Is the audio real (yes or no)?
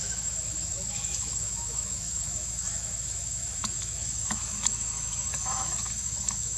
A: no